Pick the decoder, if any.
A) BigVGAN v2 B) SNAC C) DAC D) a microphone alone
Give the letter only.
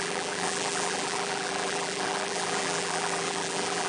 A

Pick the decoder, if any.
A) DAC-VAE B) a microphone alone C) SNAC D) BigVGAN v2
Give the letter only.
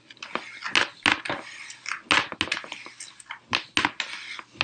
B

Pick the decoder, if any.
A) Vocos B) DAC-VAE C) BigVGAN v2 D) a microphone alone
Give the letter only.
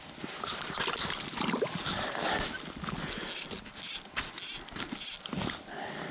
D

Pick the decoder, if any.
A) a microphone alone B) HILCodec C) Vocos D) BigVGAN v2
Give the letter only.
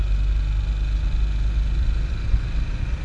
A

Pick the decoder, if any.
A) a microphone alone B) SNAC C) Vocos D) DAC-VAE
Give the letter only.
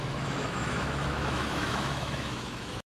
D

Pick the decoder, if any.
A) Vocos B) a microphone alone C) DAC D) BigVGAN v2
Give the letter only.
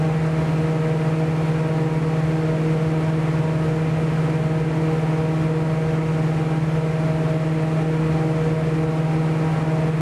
B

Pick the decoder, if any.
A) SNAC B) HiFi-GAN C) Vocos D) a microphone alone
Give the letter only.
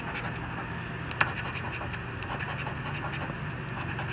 D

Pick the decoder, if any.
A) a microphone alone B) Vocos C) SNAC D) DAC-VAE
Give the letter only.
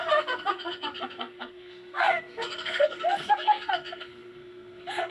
C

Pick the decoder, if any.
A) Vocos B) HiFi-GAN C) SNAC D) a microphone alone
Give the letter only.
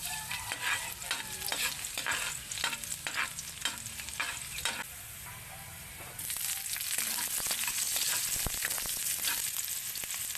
D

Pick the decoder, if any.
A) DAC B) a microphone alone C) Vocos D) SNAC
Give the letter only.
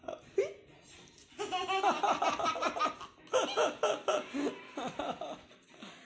B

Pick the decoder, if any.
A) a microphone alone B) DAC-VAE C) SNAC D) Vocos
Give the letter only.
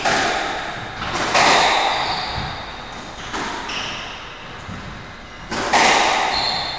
A